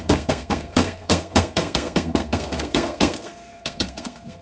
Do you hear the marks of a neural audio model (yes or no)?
yes